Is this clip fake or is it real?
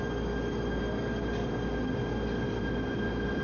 real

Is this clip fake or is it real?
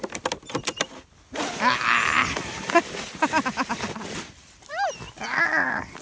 real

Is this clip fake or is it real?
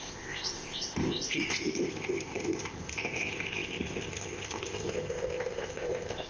fake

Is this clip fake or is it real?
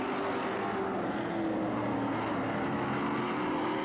real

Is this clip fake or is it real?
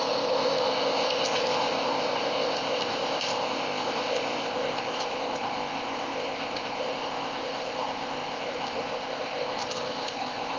fake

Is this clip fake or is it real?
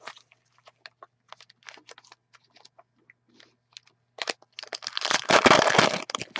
real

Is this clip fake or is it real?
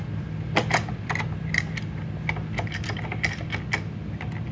real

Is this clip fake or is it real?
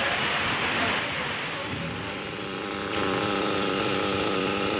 real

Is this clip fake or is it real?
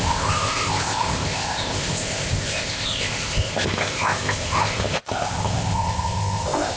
fake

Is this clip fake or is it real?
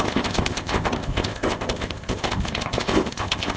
fake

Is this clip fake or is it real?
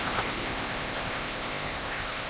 fake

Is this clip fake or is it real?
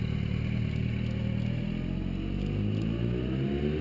real